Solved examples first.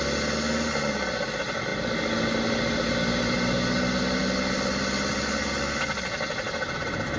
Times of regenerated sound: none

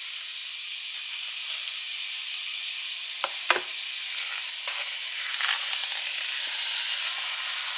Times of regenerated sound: none

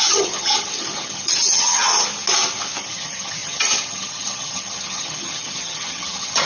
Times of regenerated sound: 0.0-1.9 (vocoder, HiFi-GAN); 2.8-6.5

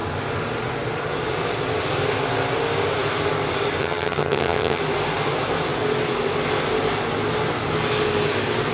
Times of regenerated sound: 3.8-4.8 (vocoder, HiFi-GAN)